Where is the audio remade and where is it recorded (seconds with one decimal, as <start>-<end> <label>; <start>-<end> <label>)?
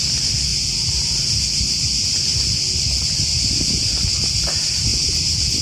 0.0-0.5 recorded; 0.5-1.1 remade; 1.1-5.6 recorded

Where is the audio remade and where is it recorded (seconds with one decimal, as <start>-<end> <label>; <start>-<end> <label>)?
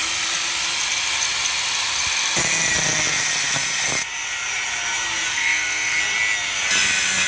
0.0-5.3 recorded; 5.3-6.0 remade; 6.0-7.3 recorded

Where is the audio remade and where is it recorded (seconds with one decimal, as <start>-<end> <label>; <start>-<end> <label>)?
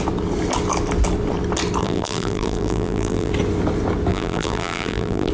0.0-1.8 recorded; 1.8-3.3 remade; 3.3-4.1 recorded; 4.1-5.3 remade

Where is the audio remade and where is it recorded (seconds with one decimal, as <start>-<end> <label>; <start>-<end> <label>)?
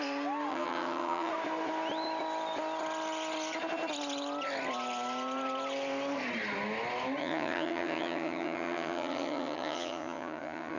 0.0-0.5 recorded; 0.5-1.3 remade; 1.3-7.2 recorded; 7.2-10.8 remade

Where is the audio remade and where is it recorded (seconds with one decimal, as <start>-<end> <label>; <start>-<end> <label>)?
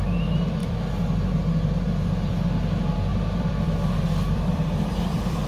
0.0-3.1 recorded; 3.1-5.5 remade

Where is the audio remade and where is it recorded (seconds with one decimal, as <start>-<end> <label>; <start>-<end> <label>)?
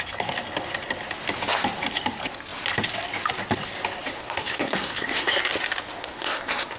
0.0-4.1 recorded; 4.1-5.3 remade; 5.3-6.0 recorded; 6.0-6.8 remade